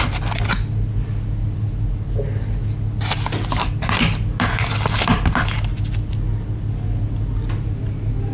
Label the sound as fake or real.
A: real